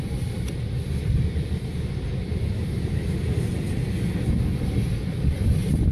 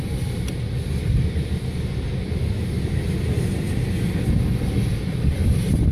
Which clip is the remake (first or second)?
first